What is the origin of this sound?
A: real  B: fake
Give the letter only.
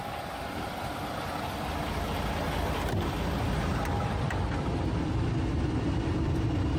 A